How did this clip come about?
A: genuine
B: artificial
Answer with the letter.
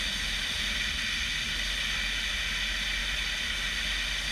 A